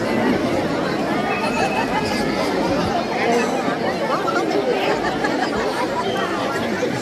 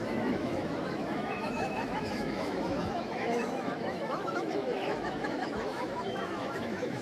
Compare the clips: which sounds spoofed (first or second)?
second